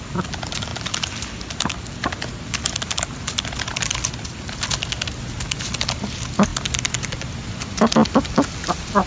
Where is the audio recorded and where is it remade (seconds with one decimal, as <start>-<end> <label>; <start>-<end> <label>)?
0.0-9.1 recorded